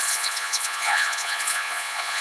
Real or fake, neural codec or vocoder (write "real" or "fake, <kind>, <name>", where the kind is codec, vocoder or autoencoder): fake, vocoder, Vocos